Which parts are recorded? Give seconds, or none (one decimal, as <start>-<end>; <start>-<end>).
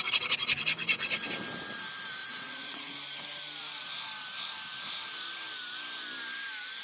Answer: 0.0-2.2; 2.9-6.8